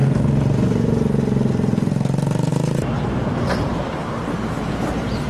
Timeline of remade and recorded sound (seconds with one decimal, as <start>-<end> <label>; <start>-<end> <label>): 0.0-2.5 recorded; 2.5-5.3 remade